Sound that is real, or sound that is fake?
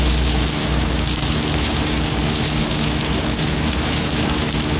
fake